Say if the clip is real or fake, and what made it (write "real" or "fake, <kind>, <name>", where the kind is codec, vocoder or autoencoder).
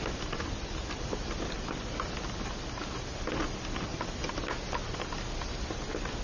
real